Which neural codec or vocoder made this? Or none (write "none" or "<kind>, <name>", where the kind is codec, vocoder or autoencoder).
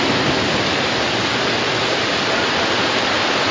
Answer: none